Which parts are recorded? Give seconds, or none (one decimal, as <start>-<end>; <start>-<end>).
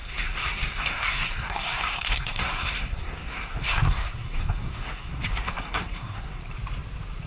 6.4-7.3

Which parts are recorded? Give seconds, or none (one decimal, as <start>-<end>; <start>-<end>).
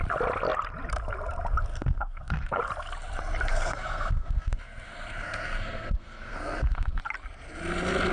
0.0-1.7; 2.6-3.5; 7.0-8.1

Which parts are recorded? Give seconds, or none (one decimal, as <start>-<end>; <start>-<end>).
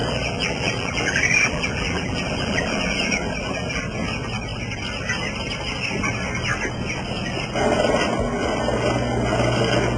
3.8-10.0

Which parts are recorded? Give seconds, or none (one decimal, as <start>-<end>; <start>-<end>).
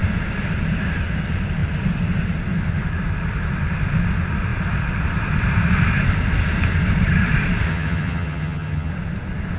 0.0-7.7; 8.9-9.6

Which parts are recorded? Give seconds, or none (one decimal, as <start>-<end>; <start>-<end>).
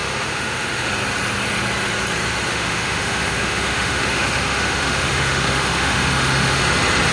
0.9-2.5; 6.6-7.1